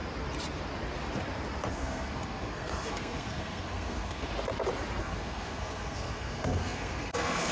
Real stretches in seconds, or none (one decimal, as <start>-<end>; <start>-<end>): 0.0-1.7; 4.3-5.0